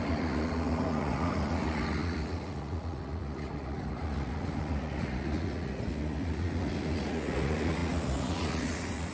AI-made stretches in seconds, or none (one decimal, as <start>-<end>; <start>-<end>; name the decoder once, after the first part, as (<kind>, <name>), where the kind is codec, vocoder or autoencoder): 0.0-9.1 (vocoder, Vocos)